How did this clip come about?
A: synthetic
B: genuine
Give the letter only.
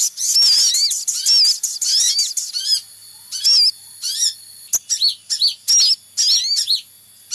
B